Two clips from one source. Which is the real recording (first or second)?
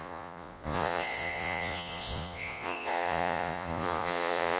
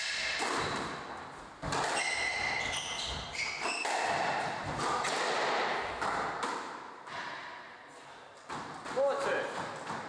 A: second